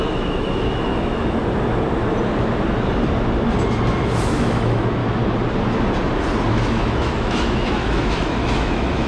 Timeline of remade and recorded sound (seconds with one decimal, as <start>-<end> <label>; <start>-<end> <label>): 0.0-1.4 remade; 1.4-4.2 recorded; 4.2-5.0 remade; 5.0-6.5 recorded; 6.5-9.1 remade